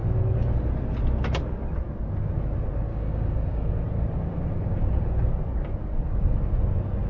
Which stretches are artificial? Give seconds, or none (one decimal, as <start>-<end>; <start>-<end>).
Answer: 2.9-3.7

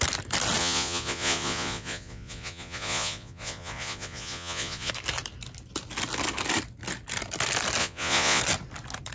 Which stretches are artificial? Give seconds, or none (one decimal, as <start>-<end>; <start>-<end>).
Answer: 0.6-4.9; 7.8-8.4

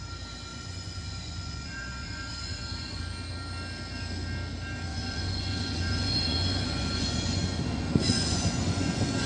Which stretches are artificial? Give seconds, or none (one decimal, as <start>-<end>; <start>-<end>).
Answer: 0.5-3.0; 4.9-9.3

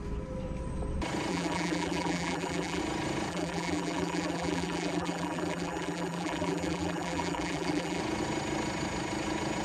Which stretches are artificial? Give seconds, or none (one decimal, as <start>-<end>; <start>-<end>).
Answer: 1.3-2.8; 3.3-8.0

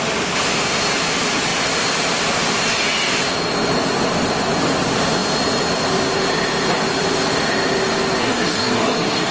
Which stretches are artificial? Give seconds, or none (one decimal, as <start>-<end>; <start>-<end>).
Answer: 8.2-9.3

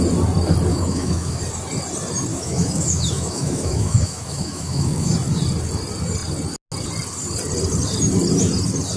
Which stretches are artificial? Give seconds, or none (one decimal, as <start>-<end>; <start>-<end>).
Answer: 0.7-1.4; 2.3-5.1

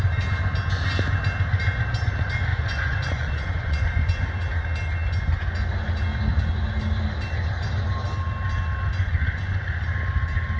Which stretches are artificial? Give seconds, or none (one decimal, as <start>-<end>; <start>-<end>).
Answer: 2.5-4.4; 9.0-9.7